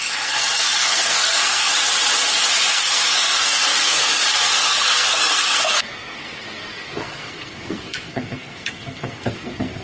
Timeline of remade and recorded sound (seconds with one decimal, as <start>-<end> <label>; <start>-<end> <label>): 0.0-1.7 remade; 1.7-2.7 recorded; 2.7-9.8 remade

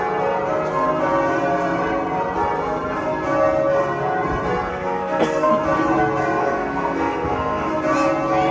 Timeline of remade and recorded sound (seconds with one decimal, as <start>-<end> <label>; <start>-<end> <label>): 0.0-4.7 recorded; 4.7-5.5 remade; 5.5-6.4 recorded; 6.4-7.7 remade; 7.7-8.5 recorded

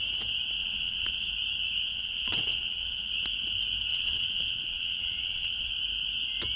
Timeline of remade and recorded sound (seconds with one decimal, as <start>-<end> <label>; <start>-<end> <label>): 0.0-0.6 recorded; 0.6-1.3 remade; 1.3-1.9 recorded; 1.9-3.1 remade; 3.1-3.9 recorded; 3.9-5.7 remade; 5.7-6.6 recorded

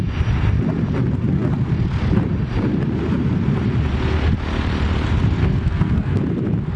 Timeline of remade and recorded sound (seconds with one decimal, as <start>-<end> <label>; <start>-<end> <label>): 0.0-5.4 recorded; 5.4-6.2 remade; 6.2-6.8 recorded

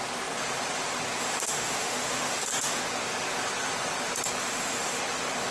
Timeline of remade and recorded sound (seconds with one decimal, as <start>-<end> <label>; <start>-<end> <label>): 0.0-1.2 recorded; 1.2-2.8 remade; 2.8-4.4 recorded; 4.4-5.0 remade; 5.0-5.5 recorded